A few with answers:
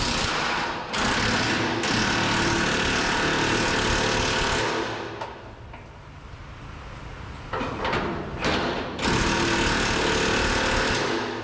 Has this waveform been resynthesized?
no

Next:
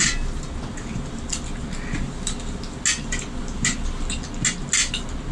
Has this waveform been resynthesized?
no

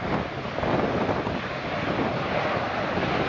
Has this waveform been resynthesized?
no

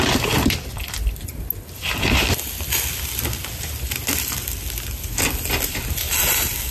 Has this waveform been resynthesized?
no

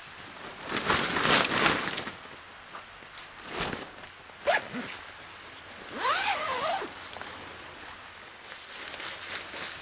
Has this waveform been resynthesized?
no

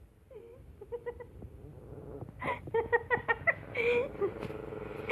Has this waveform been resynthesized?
yes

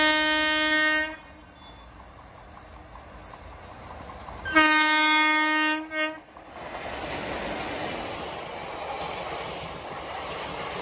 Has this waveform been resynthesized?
no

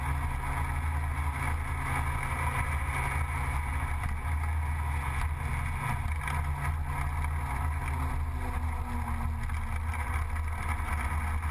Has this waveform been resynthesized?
no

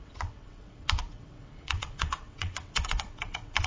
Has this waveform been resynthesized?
yes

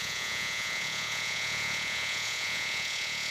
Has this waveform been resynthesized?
yes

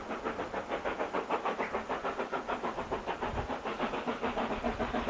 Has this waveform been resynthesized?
no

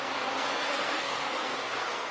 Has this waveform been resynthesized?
yes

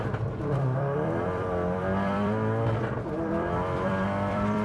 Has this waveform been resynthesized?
yes